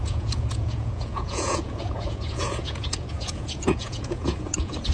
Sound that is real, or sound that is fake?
fake